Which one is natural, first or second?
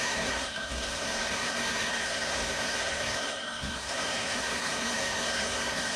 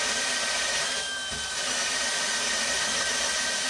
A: second